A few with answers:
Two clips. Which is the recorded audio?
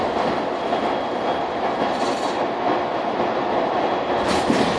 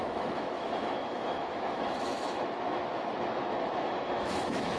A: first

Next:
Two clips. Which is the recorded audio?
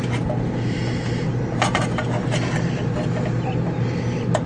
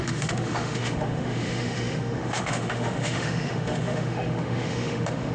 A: first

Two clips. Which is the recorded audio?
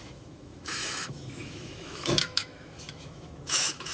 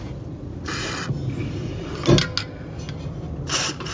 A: second